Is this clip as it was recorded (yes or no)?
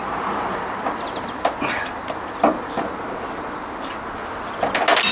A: yes